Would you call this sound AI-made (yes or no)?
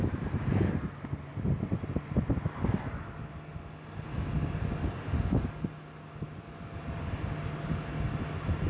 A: no